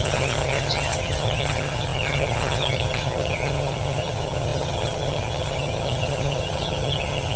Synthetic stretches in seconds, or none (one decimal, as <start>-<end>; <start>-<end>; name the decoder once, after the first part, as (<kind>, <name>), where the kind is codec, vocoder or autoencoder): 0.0-7.4 (vocoder, HiFi-GAN)

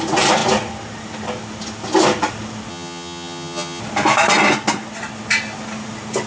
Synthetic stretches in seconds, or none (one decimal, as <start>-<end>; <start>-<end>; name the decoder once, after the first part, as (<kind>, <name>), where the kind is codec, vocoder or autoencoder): 2.7-3.8 (vocoder, HiFi-GAN)